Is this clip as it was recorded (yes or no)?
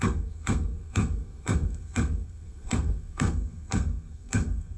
no